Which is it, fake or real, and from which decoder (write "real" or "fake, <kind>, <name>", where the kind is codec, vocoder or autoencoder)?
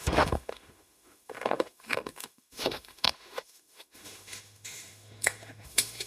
fake, autoencoder, DAC-VAE